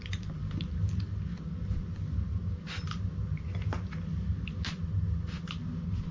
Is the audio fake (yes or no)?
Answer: no